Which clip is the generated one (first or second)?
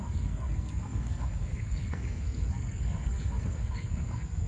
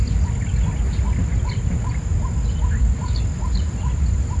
first